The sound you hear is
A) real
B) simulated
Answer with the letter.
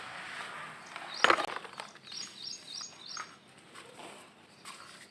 A